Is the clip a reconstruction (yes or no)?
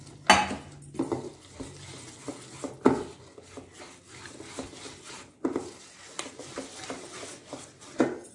no